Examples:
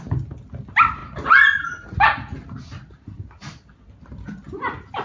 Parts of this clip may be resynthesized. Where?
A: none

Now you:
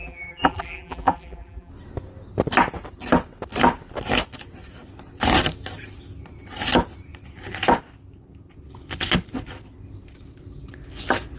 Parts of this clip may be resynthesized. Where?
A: 0.0-1.7 (vocoder, BigVGAN v2)

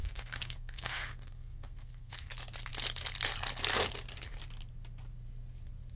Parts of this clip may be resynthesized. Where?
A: 0.0-2.3 (codec, SNAC)

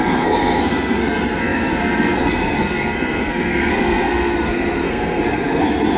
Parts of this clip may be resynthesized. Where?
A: 0.0-6.0 (codec, SNAC)

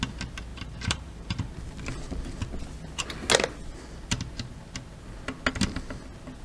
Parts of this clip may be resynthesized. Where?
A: 0.5-1.5 (vocoder, BigVGAN v2)

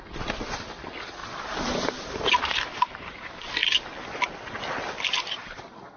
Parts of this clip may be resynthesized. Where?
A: 1.2-3.0 (vocoder, BigVGAN v2); 3.6-5.4

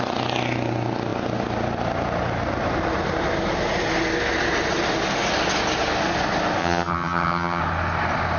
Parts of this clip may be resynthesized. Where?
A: 6.6-7.6 (vocoder, HiFi-GAN)